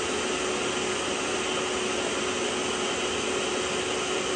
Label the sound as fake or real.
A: real